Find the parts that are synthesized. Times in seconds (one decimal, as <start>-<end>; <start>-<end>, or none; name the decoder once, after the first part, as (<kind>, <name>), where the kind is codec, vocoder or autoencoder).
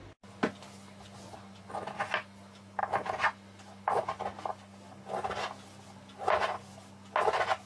none